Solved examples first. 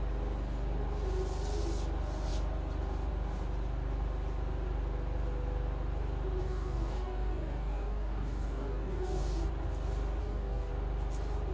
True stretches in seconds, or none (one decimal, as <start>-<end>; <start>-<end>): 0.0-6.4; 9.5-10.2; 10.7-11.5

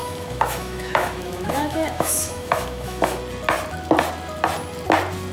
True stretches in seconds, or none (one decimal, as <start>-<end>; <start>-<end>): 3.2-5.3

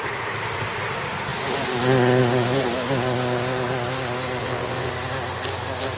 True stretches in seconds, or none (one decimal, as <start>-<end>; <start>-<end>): 0.0-4.4; 4.9-6.0